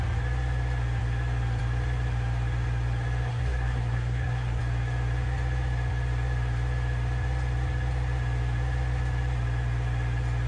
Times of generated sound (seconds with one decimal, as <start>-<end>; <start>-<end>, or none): 3.3-4.6